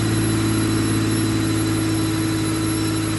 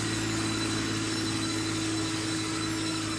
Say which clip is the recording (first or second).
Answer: first